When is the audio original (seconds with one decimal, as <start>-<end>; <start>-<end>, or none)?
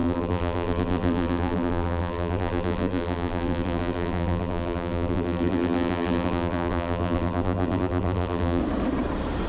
8.6-9.5